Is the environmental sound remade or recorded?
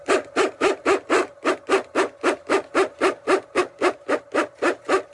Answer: recorded